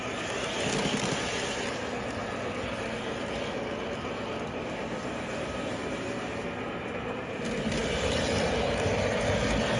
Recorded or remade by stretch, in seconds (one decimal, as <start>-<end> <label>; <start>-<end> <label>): 0.0-9.8 recorded